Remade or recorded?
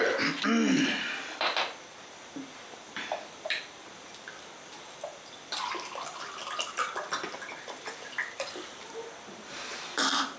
remade